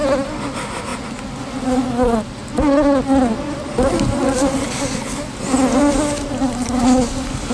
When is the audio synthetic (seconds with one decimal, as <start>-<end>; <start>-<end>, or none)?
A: none